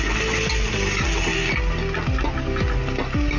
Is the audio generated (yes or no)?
no